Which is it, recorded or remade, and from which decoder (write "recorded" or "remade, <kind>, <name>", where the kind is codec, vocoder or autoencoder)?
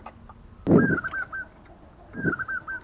recorded